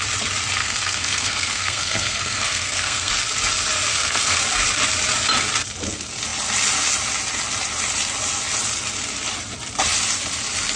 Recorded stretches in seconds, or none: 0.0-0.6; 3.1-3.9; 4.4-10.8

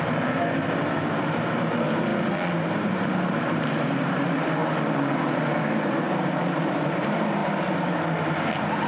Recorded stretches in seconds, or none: 2.1-2.7; 4.6-5.6; 7.4-8.9

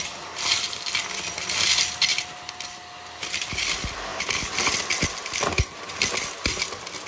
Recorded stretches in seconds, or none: 0.0-2.1; 3.4-7.1

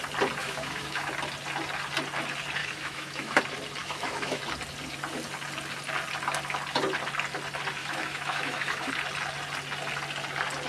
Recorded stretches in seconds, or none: 0.0-0.4; 1.1-2.6; 3.4-3.8; 4.4-7.8; 8.9-10.7

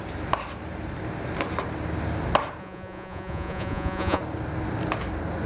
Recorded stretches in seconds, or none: 0.0-2.6; 4.2-5.5

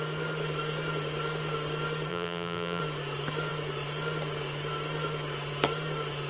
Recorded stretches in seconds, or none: 0.0-2.1; 2.8-6.3

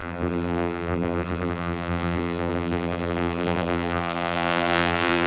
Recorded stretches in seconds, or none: none

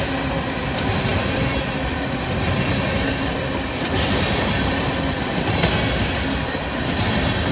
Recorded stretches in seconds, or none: 0.0-7.5